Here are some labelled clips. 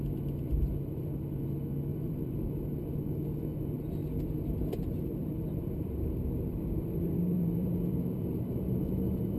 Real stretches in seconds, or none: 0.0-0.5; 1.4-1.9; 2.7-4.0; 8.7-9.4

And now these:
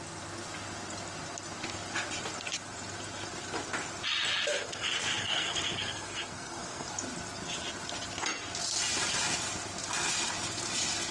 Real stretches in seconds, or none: 0.0-4.5; 6.9-11.1

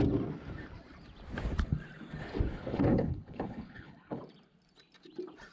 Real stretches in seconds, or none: 0.0-2.5; 4.2-5.5

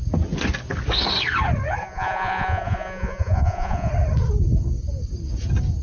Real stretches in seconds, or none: 0.0-1.8; 3.9-5.8

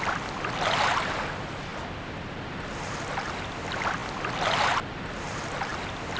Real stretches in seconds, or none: 0.0-6.2

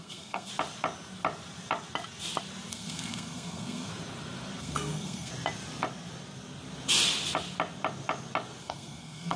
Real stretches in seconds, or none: 0.5-2.7; 3.9-4.6; 5.3-8.6